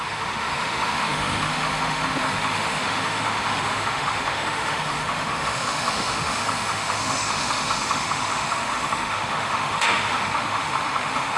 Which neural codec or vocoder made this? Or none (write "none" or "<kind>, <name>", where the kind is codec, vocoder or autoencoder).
autoencoder, DAC-VAE